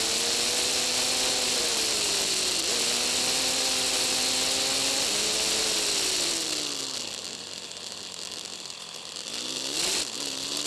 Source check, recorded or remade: recorded